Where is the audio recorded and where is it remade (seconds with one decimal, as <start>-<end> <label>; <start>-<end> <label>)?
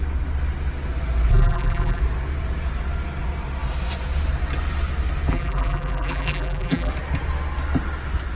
0.0-1.3 recorded; 1.3-2.0 remade; 2.0-5.3 recorded; 5.3-6.9 remade; 6.9-8.4 recorded